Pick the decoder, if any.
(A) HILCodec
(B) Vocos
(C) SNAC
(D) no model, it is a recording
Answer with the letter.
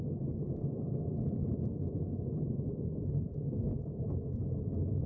D